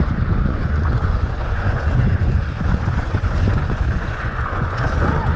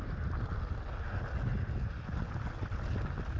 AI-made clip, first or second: first